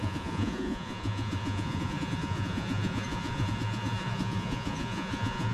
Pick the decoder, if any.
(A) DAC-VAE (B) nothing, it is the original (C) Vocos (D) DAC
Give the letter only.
C